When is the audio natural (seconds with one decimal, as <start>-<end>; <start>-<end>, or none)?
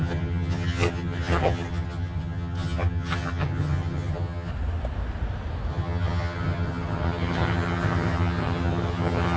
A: 4.5-5.7